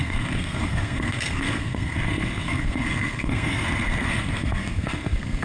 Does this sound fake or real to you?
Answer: fake